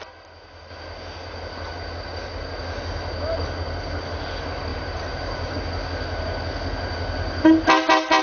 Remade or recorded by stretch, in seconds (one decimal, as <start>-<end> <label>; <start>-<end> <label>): 0.0-4.7 recorded; 4.7-5.5 remade; 5.5-8.2 recorded